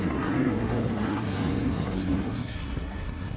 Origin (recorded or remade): remade